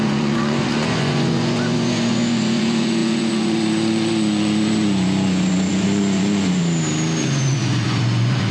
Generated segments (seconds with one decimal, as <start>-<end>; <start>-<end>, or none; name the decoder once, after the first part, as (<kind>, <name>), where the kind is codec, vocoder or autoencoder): 0.0-6.6 (vocoder, Vocos); 7.2-8.5